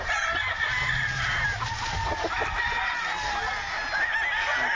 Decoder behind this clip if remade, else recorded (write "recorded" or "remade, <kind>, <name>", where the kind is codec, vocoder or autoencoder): recorded